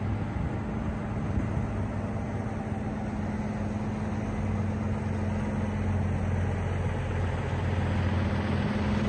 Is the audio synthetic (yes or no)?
no